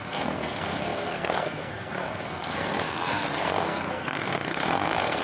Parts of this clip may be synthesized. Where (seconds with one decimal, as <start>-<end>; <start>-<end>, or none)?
0.0-5.2